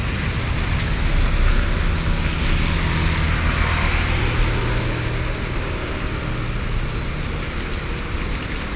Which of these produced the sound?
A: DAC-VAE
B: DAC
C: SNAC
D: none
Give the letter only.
D